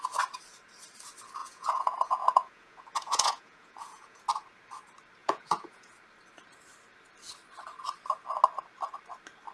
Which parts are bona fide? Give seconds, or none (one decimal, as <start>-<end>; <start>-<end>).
0.0-1.4; 4.2-5.2; 5.9-9.5